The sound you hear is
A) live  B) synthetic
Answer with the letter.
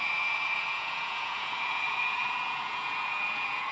B